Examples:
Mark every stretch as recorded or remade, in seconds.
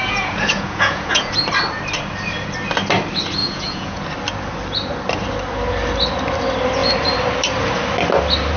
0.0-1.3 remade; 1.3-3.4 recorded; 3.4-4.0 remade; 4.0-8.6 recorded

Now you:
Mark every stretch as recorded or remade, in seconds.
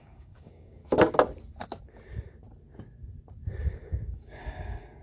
0.0-0.8 remade; 0.8-3.6 recorded; 3.6-5.0 remade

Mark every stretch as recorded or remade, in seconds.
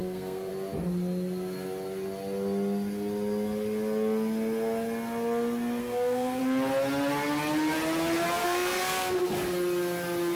0.0-0.5 remade; 0.5-5.8 recorded; 5.8-6.4 remade; 6.4-8.4 recorded; 8.4-9.1 remade; 9.1-10.4 recorded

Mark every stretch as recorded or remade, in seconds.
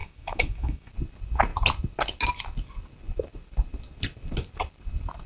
0.0-0.9 remade; 0.9-5.3 recorded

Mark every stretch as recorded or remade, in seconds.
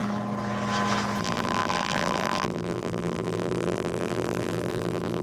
0.0-1.2 recorded; 1.2-5.2 remade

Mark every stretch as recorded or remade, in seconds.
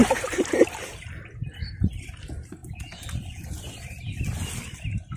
0.0-0.6 remade; 0.6-5.2 recorded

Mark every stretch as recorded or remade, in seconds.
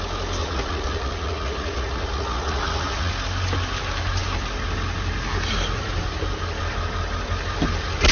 0.0-0.4 recorded; 0.4-3.1 remade; 3.1-8.1 recorded